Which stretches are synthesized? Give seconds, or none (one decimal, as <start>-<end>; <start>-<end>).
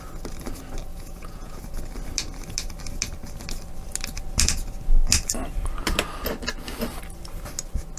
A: 0.9-1.6